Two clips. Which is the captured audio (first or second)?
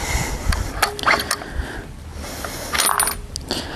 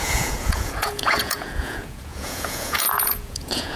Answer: first